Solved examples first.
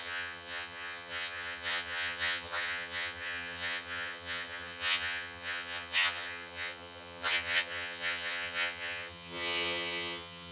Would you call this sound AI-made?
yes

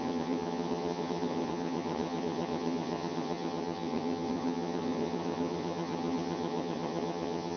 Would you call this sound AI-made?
yes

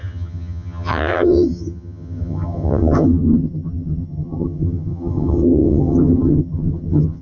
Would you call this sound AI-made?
yes